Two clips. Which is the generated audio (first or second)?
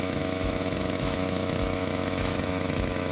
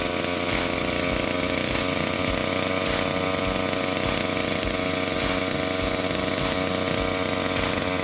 first